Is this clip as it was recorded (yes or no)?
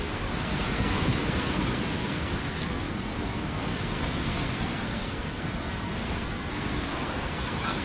no